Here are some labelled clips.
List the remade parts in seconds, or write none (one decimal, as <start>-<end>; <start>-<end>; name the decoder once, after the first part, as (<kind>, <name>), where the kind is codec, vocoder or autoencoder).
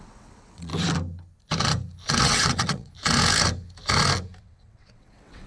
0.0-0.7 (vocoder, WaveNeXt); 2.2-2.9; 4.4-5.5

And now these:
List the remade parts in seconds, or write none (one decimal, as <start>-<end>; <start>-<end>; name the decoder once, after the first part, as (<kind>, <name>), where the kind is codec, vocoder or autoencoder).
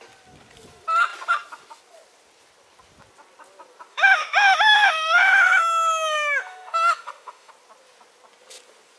3.9-7.5 (autoencoder, DAC-VAE)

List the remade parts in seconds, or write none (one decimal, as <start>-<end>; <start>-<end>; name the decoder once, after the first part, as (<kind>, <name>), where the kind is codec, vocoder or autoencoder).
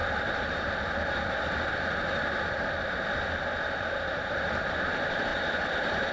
none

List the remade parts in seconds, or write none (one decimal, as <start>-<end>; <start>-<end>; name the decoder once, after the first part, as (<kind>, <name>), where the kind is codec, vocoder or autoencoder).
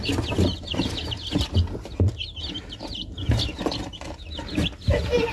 none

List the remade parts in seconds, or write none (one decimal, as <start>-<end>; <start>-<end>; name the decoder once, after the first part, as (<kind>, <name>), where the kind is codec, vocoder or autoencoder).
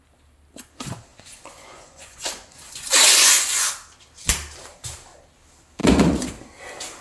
1.1-3.7 (vocoder, Vocos); 5.8-6.3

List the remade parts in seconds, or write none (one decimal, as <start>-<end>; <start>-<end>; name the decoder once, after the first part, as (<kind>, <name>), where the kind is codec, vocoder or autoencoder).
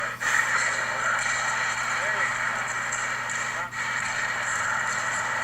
none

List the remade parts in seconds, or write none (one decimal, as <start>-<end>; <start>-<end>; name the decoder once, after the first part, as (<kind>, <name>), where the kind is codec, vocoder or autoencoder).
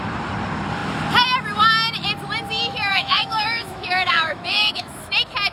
2.9-5.1 (autoencoder, DAC-VAE)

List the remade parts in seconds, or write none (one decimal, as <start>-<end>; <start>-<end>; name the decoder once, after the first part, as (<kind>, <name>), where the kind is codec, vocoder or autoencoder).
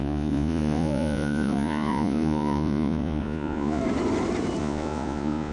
0.0-3.8 (vocoder, Vocos); 4.6-5.5